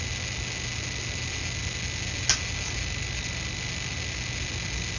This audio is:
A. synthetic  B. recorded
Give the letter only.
B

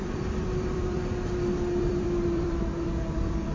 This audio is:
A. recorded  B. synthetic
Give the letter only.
B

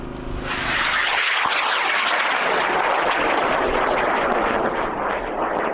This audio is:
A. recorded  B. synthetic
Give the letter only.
B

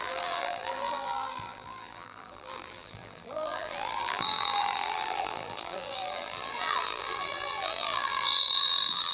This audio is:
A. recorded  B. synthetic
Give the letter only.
B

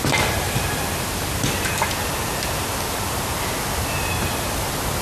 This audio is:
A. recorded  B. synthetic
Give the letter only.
A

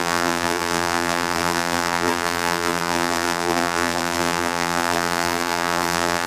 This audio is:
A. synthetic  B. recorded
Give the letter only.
A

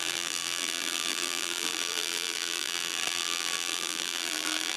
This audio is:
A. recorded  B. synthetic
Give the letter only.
B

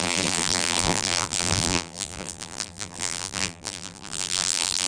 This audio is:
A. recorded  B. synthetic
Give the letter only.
B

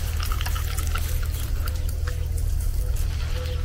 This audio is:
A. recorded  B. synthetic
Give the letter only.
A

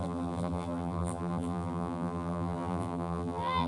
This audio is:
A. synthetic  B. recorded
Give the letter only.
A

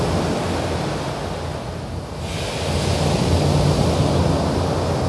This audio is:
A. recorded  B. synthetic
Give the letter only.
A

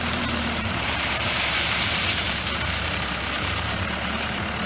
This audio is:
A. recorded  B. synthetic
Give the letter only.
B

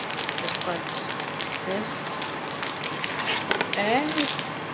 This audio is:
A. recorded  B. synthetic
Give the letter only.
A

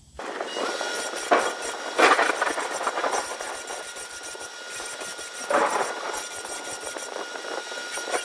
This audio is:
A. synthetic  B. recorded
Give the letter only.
B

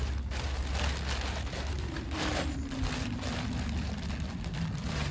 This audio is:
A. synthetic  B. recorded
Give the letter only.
B